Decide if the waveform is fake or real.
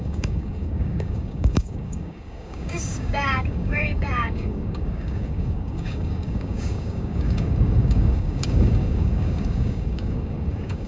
fake